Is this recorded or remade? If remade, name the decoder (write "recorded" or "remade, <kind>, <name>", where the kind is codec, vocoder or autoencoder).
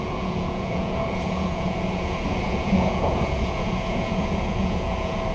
remade, vocoder, Vocos